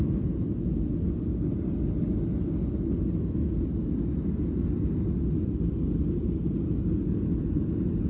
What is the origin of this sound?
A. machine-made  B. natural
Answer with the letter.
B